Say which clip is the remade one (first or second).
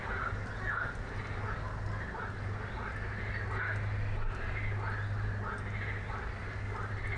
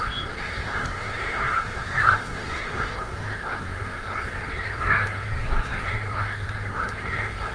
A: second